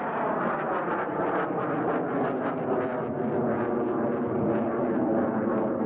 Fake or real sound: real